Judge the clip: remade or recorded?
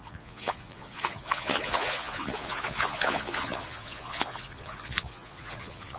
remade